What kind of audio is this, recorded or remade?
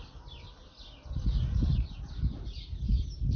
recorded